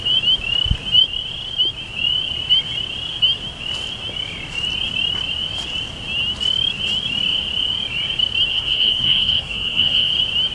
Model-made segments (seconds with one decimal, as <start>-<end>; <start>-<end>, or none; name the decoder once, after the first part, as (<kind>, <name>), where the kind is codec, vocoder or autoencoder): 8.5-10.1 (codec, SNAC)